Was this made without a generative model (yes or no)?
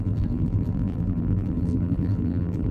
no